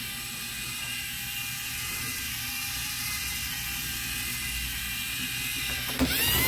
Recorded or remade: recorded